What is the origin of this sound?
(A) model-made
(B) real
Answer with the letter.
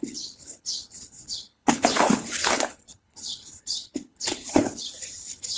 A